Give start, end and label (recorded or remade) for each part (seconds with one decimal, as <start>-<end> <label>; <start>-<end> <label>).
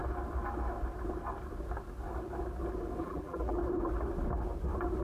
0.0-3.0 recorded; 3.0-3.6 remade; 3.6-5.0 recorded